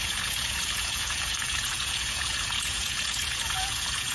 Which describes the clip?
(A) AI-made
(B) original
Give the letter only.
A